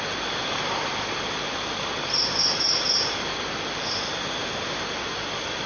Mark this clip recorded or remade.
recorded